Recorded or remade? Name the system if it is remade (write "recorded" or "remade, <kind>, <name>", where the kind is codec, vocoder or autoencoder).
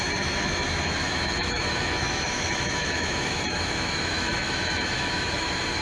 remade, autoencoder, DAC-VAE